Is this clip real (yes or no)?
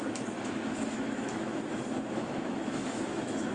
no